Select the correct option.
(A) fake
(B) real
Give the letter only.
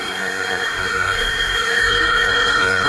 A